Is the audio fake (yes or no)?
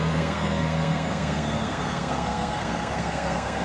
yes